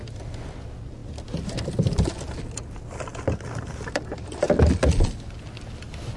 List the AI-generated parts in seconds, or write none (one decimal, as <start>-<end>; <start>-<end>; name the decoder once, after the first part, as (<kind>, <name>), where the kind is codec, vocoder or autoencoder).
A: none

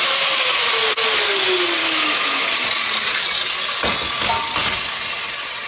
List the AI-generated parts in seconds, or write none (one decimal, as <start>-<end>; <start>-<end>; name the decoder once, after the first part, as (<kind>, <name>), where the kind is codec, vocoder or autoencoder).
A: 1.8-2.5 (autoencoder, DAC-VAE)

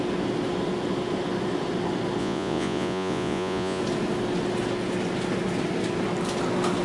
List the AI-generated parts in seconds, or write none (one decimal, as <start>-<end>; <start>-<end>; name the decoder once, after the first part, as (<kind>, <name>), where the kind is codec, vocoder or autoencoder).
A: 2.2-3.8 (vocoder, Vocos)